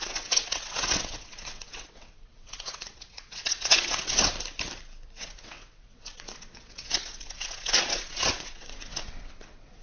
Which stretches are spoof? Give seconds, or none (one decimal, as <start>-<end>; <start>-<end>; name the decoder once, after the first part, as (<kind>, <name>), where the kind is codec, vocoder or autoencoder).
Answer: 0.0-4.3 (vocoder, WaveNeXt); 5.2-9.8